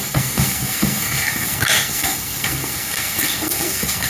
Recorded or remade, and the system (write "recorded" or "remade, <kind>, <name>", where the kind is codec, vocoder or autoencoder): remade, codec, SNAC